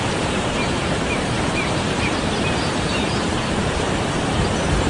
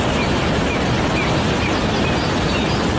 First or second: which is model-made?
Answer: first